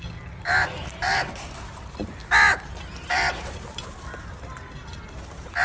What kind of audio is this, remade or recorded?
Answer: recorded